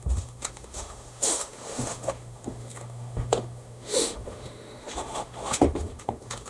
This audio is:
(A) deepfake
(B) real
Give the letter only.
A